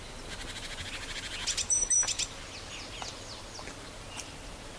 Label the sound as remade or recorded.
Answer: recorded